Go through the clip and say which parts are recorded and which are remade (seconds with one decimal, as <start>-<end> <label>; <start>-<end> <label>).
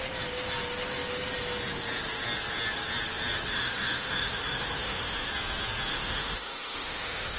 0.0-3.5 recorded; 3.5-5.3 remade; 5.3-5.9 recorded; 5.9-7.4 remade